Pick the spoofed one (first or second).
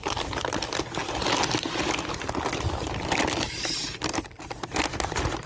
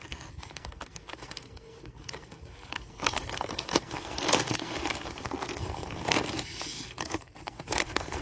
second